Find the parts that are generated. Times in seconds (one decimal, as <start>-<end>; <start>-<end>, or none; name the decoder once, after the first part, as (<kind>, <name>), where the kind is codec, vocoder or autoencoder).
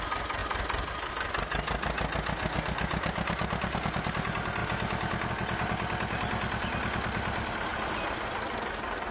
none